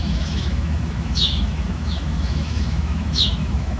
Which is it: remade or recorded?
remade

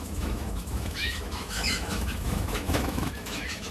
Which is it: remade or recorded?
remade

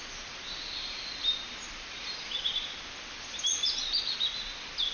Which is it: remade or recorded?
recorded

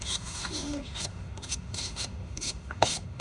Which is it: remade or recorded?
remade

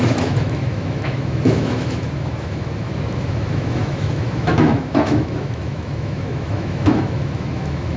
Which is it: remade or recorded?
remade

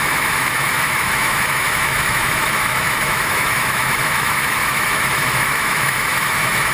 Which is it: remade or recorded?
remade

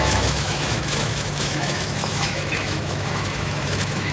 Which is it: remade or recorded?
remade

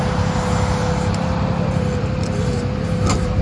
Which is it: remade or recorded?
recorded